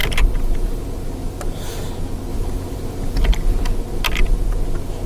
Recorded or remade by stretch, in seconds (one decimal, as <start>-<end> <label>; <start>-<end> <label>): 0.0-1.0 remade; 1.0-2.3 recorded; 2.3-3.3 remade; 3.3-5.1 recorded